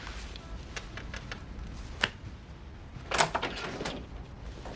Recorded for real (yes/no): yes